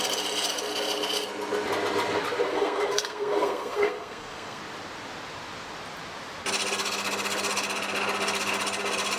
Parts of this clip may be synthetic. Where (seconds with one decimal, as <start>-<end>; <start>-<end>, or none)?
2.5-4.6

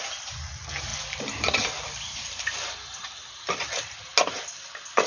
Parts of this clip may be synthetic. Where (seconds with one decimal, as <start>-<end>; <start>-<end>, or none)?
none

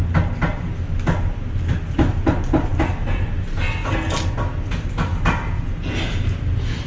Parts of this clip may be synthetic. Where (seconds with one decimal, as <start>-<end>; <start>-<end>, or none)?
none

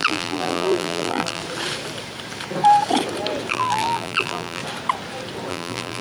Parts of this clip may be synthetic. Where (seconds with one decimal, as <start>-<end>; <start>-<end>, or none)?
0.0-1.4; 3.5-4.6; 5.5-6.0